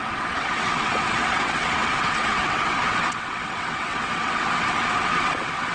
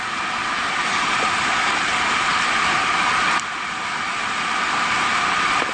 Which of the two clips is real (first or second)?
second